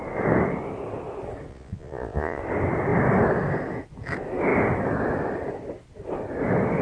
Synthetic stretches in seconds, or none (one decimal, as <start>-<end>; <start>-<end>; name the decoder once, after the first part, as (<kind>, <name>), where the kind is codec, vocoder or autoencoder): 1.5-2.4 (vocoder, Vocos)

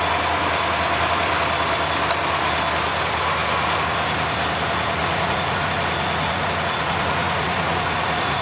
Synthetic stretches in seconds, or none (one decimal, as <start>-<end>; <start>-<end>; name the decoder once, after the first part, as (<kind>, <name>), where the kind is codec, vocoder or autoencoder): 5.0-8.4 (vocoder, Vocos)

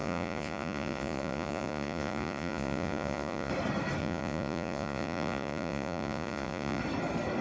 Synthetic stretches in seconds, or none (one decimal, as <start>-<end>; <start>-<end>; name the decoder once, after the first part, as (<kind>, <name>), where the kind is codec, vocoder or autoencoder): 0.0-3.5 (vocoder, Vocos); 4.0-6.8

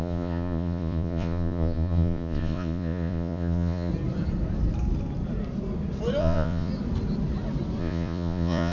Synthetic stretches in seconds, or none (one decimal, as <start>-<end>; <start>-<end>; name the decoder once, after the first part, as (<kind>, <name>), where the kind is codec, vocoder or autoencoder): 0.0-3.9 (vocoder, Vocos); 6.2-6.7; 7.8-8.7

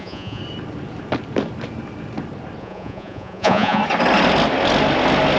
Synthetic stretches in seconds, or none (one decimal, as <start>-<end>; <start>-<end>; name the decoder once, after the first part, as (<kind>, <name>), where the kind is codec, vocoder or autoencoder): 0.0-0.4 (vocoder, Vocos); 2.6-3.8

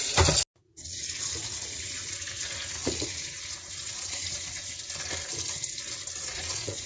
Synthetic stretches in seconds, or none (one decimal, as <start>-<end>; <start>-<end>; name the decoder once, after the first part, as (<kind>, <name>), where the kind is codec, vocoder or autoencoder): 0.6-4.7 (vocoder, Vocos); 6.3-6.9

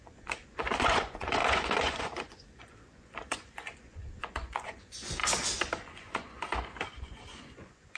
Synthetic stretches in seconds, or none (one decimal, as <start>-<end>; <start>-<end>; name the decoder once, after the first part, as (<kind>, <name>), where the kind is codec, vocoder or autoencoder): 0.0-5.2 (vocoder, Vocos); 5.9-8.0